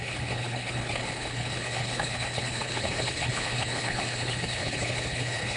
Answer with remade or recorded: remade